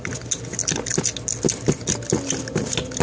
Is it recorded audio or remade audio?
recorded